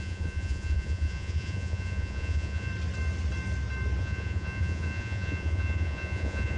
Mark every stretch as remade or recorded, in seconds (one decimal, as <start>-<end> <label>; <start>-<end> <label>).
0.0-2.7 remade; 2.7-4.0 recorded; 4.0-6.6 remade